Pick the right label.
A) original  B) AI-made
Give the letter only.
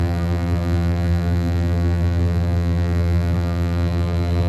B